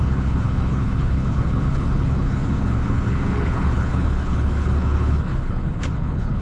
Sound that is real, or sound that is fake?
fake